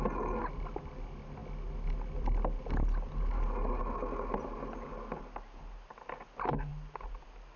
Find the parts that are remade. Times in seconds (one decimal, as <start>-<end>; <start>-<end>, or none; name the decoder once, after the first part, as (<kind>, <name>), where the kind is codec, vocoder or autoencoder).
none